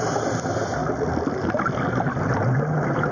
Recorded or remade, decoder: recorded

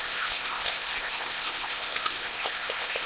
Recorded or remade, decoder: remade, codec, ZipCodec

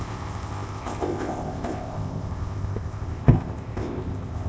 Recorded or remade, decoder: remade, codec, ZipCodec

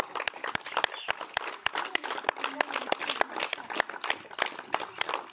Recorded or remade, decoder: recorded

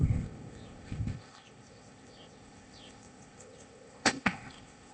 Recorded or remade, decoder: remade, codec, ZipCodec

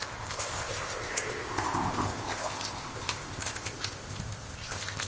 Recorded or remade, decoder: remade, codec, ZipCodec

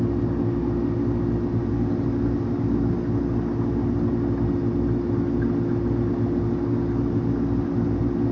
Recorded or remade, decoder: recorded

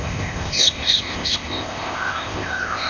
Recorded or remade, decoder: remade, codec, ZipCodec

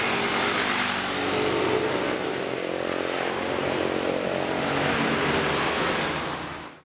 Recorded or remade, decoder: recorded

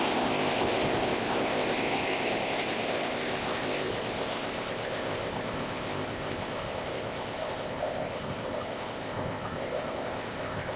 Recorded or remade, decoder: remade, codec, ZipCodec